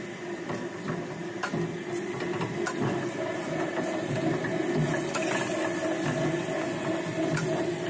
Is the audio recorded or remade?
recorded